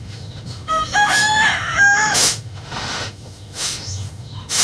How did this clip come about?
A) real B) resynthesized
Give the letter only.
B